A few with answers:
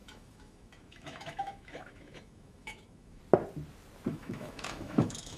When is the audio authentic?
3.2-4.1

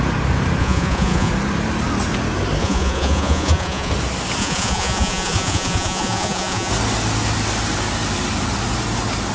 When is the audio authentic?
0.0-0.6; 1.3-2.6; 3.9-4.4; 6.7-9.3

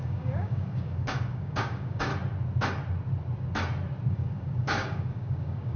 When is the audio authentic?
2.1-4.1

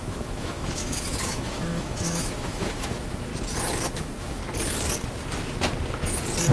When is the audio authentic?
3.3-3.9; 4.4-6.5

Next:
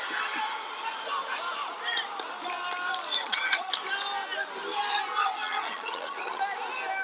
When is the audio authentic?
0.0-3.2; 3.7-5.2; 6.4-7.0